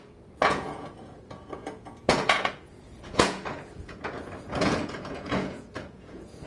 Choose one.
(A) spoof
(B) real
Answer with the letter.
A